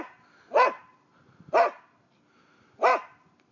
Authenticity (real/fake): real